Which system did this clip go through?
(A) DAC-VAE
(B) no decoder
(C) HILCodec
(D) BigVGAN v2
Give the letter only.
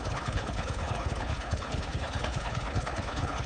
C